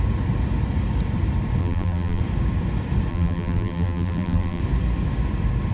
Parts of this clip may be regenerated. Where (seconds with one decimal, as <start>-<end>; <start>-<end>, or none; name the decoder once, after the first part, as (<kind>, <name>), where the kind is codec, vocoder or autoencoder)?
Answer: 1.6-2.2 (vocoder, BigVGAN v2); 3.1-4.6